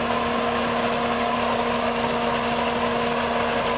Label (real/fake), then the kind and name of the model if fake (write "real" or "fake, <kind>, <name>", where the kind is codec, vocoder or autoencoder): real